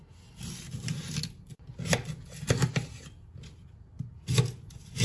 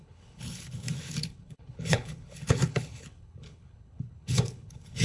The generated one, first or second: second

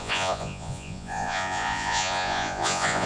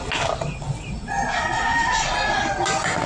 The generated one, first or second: first